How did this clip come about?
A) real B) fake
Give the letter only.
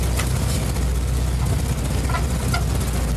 A